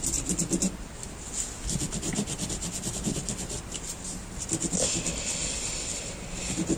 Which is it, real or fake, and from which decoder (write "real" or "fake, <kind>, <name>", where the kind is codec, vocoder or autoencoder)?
real